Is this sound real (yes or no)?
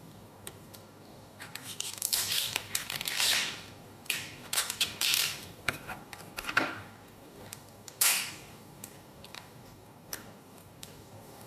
no